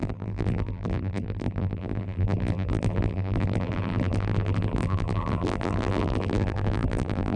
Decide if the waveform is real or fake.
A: fake